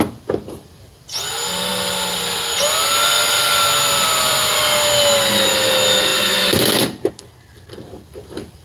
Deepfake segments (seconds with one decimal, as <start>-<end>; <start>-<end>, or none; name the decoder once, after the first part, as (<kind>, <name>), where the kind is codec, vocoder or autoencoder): none